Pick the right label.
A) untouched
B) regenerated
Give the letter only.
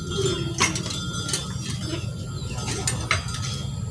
A